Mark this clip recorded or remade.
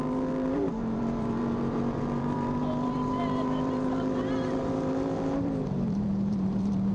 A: remade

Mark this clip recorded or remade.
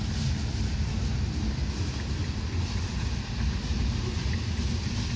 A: recorded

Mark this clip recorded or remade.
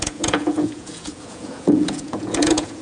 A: remade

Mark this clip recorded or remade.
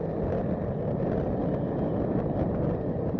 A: recorded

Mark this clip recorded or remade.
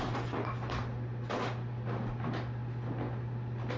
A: recorded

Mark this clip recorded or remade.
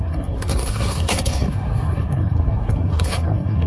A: remade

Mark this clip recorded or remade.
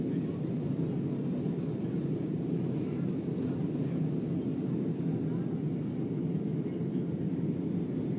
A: recorded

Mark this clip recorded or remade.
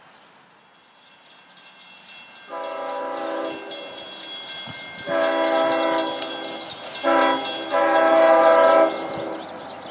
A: recorded